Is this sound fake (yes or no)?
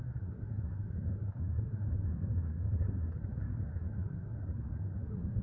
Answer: yes